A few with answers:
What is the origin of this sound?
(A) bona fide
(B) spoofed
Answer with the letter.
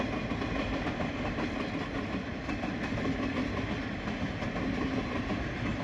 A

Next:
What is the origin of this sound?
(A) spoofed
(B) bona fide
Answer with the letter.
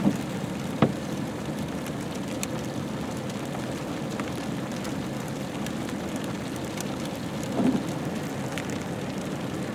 B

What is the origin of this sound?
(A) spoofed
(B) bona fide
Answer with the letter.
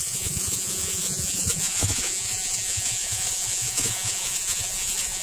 A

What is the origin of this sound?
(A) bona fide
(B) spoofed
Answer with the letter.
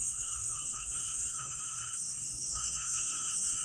B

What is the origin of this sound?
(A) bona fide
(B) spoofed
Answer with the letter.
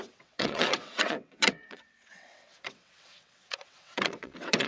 B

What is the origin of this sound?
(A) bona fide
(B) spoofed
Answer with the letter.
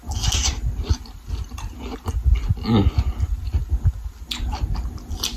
A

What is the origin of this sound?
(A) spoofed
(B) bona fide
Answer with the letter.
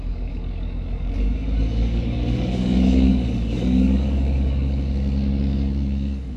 A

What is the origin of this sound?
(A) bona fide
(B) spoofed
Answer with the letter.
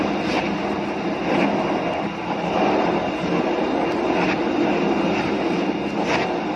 A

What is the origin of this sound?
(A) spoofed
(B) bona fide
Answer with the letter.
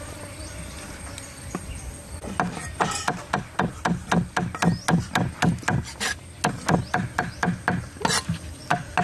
B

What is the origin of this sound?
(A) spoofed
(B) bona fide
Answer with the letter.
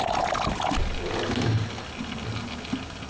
B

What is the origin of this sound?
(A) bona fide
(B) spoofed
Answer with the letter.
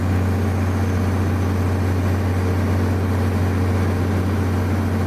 A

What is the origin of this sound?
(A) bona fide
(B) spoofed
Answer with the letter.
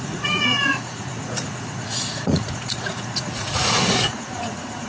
B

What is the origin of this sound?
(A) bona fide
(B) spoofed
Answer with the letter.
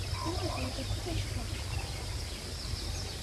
A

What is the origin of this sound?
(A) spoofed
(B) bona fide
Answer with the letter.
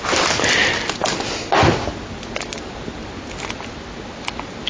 B